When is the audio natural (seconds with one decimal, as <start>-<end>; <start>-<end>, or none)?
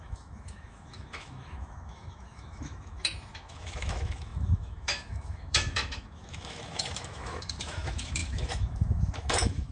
none